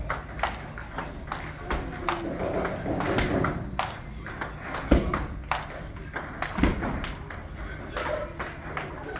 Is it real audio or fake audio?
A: real